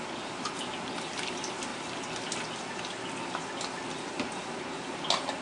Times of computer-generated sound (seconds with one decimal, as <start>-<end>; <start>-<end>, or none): none